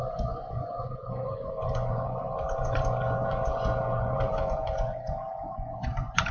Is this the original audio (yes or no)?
no